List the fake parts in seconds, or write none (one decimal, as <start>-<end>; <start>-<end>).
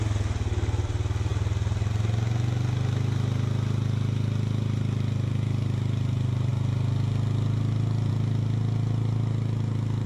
none